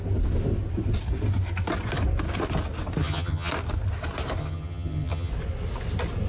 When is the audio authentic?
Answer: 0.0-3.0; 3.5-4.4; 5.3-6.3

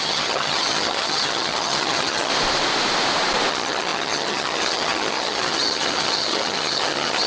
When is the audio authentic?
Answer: 2.3-3.5

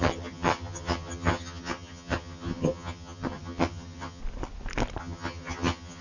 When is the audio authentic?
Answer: 4.2-5.0

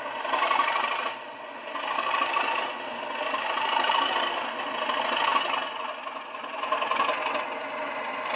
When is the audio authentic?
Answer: 0.0-8.4

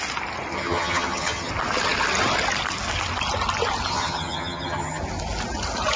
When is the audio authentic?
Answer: 0.0-0.5; 1.5-3.9; 5.0-6.0

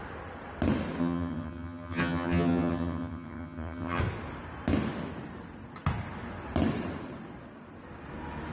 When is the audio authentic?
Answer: 0.0-1.0; 4.0-8.5

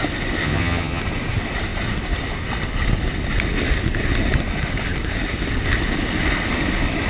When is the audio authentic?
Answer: 0.0-0.4; 1.0-7.1